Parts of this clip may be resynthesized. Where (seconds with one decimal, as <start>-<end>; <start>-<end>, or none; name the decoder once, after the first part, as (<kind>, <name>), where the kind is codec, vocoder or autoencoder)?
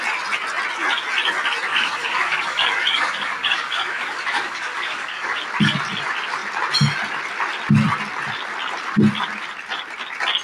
1.7-5.4 (codec, DAC)